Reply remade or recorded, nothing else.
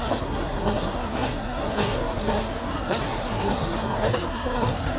remade